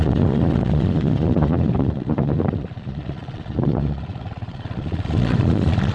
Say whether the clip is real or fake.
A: fake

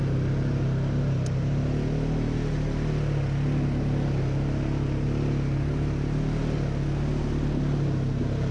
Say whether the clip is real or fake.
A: real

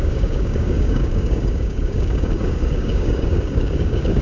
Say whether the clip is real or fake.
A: fake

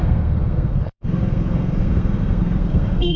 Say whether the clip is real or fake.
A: fake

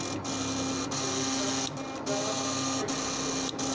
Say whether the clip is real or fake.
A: real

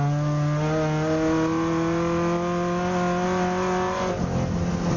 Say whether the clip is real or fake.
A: real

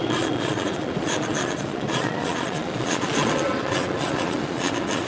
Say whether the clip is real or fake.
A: fake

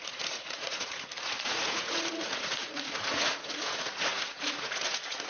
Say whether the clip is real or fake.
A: fake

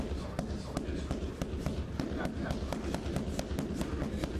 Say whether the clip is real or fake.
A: real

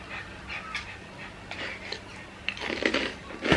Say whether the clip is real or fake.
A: real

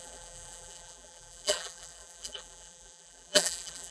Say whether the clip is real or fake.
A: fake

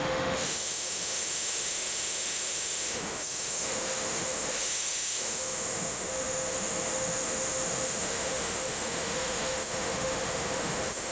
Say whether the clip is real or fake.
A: fake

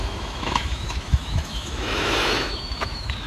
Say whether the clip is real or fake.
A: fake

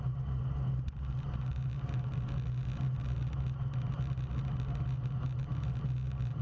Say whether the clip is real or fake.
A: real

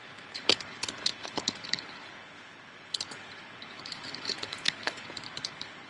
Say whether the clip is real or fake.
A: fake